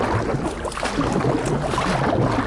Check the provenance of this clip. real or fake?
real